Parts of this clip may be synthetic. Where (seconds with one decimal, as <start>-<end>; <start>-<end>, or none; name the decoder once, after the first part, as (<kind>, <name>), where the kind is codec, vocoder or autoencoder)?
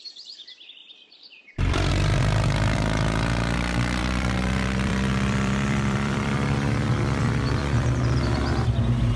0.8-1.9 (vocoder, BigVGAN v2); 4.0-7.6